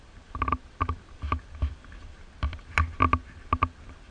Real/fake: real